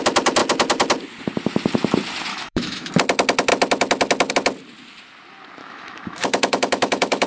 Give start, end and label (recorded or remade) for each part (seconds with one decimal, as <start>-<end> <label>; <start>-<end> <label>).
0.0-2.3 recorded; 2.3-2.9 remade; 2.9-5.6 recorded; 5.6-7.3 remade